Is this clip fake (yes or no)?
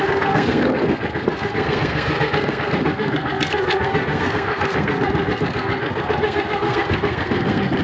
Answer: yes